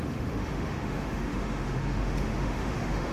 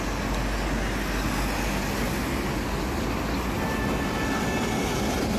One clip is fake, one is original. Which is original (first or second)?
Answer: second